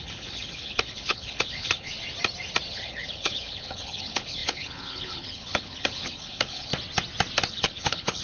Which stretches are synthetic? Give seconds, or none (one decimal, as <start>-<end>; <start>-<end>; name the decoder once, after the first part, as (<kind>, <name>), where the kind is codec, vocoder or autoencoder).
0.0-1.9 (codec, HILCodec); 2.7-6.7; 7.5-8.2